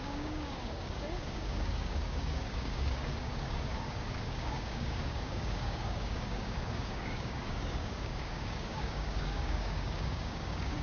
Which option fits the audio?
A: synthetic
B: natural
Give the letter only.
A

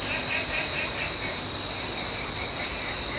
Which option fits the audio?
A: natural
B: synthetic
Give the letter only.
A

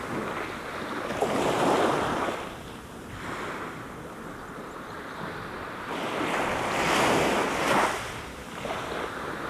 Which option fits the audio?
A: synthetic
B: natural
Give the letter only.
B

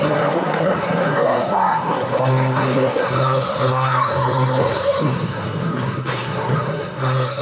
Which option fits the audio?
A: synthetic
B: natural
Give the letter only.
A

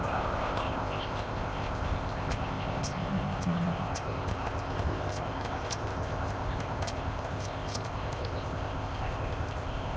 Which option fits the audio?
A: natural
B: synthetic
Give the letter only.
B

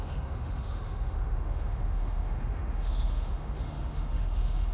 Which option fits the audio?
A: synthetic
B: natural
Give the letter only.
A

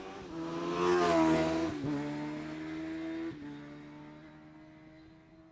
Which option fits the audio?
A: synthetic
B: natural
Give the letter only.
B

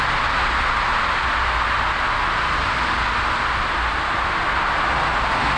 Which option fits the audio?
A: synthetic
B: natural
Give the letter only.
B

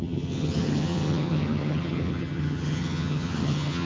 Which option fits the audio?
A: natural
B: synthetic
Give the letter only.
B